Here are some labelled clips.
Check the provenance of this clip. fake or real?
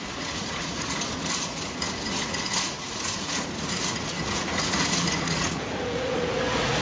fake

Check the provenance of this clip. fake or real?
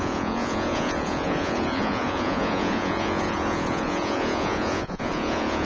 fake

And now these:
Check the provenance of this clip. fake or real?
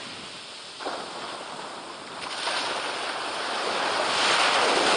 real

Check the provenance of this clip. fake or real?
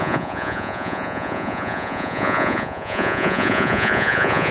fake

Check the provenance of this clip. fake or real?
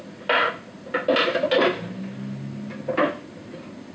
real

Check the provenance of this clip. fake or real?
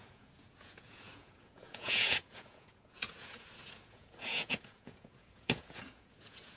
fake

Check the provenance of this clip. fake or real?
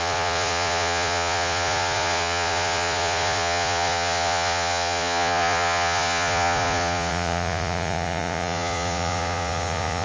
fake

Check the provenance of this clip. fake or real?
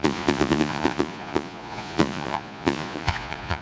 fake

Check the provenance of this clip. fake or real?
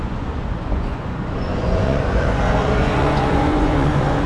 fake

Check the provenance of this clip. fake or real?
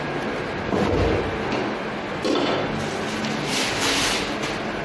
real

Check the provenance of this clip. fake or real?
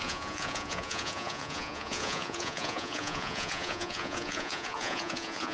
fake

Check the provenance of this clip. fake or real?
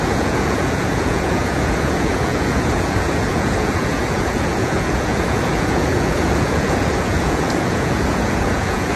fake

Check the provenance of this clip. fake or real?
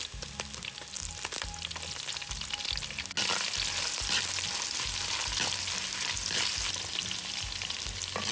real